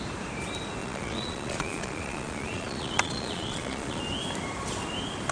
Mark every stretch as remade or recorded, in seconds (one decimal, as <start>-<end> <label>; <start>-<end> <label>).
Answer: 0.0-0.8 recorded; 0.8-4.0 remade; 4.0-5.3 recorded